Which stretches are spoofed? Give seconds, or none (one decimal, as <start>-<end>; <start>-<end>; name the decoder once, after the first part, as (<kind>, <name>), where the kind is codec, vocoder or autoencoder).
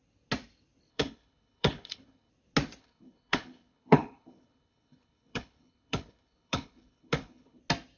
0.9-2.3 (codec, HILCodec); 2.8-7.6